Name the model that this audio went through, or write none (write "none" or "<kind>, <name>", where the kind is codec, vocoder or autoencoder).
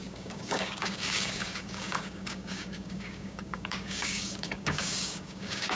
codec, DAC